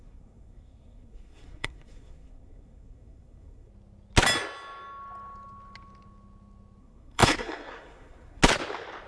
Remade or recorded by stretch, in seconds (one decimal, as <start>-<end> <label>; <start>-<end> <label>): 0.0-3.7 remade; 3.7-6.8 recorded; 6.8-8.4 remade; 8.4-9.1 recorded